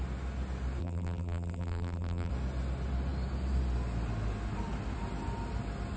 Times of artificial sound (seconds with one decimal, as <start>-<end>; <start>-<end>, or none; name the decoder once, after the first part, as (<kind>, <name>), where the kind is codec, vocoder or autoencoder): 0.8-2.3 (vocoder, BigVGAN v2)